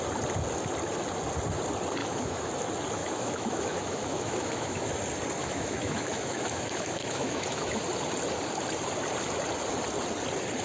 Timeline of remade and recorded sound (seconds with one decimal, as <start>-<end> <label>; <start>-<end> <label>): 0.0-2.0 recorded; 2.0-2.5 remade; 2.5-3.0 recorded; 3.0-4.9 remade; 4.9-5.4 recorded; 5.4-7.8 remade; 7.8-10.6 recorded